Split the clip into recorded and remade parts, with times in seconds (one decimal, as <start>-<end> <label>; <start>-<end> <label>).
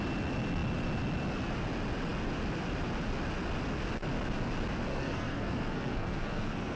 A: 0.0-4.9 recorded; 4.9-6.8 remade